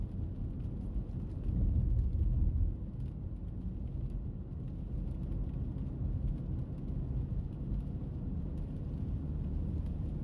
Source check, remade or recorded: recorded